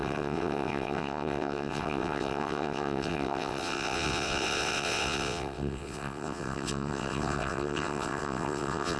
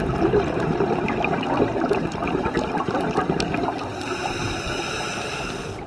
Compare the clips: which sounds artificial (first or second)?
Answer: first